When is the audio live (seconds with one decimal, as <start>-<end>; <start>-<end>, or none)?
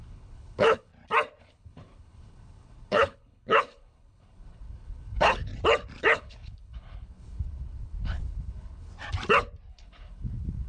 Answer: 0.9-1.4; 5.5-6.0; 8.9-9.7